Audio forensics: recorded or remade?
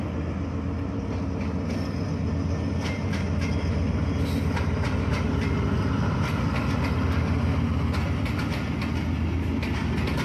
recorded